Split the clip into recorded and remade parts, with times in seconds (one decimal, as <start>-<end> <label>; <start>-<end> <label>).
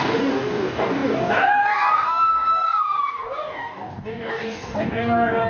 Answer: 0.0-5.5 remade